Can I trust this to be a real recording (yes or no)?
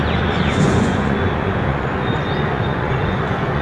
no